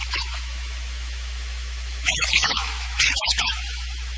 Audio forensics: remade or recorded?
remade